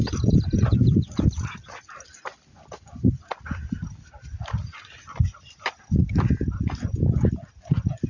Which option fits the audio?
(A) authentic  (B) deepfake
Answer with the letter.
A